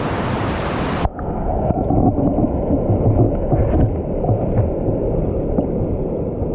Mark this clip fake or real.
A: real